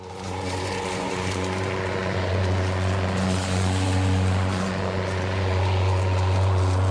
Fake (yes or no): yes